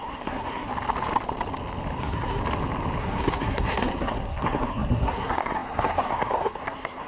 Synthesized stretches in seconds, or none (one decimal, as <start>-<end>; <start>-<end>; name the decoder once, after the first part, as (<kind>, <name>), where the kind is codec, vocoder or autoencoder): 0.0-0.7 (codec, SNAC); 2.0-2.4; 3.0-7.1